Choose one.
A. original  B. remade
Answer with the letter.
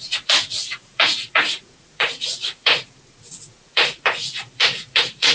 B